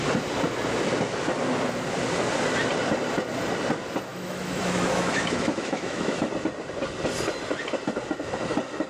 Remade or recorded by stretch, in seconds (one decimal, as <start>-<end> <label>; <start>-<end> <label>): 0.0-4.1 recorded; 4.1-6.3 remade; 6.3-8.9 recorded